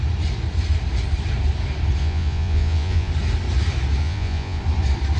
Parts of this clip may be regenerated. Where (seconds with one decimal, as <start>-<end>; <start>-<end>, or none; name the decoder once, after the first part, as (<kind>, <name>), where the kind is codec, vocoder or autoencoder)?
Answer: 2.0-3.1 (vocoder, Vocos); 4.0-4.6